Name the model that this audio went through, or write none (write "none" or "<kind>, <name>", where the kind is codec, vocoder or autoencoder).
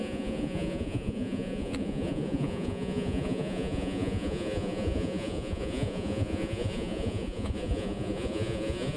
vocoder, Vocos